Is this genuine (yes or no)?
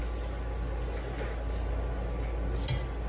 yes